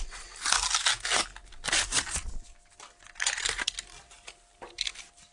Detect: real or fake real